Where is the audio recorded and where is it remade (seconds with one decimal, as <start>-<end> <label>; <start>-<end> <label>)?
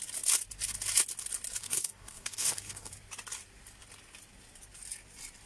0.0-1.6 recorded; 1.6-2.9 remade; 2.9-5.5 recorded